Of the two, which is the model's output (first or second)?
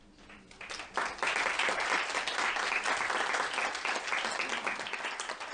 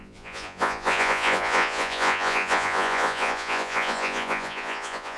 second